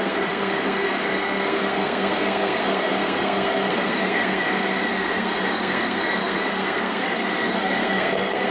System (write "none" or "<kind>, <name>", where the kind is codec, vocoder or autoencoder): codec, SNAC